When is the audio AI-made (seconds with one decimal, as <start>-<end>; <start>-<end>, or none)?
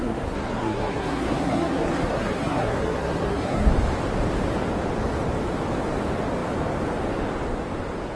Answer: 0.0-3.7